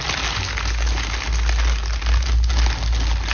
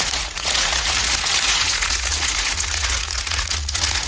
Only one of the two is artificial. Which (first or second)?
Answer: second